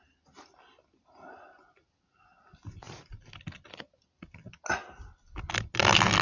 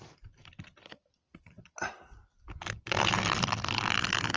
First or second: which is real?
first